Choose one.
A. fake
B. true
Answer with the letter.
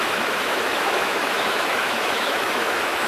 A